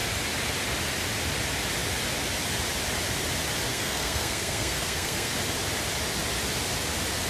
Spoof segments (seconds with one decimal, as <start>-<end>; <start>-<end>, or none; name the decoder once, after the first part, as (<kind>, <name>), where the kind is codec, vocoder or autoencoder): 3.7-5.3 (codec, SNAC)